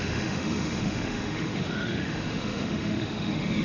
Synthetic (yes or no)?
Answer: yes